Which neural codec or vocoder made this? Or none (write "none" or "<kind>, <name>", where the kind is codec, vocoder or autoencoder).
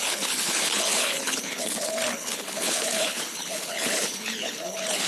codec, HILCodec